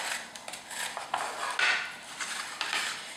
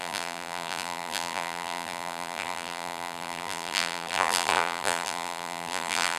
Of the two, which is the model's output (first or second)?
second